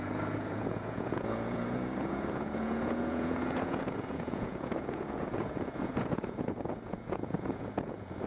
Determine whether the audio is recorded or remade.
remade